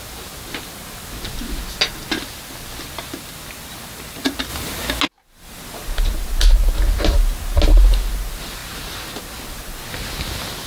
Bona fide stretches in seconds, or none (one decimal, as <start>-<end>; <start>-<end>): 0.0-10.7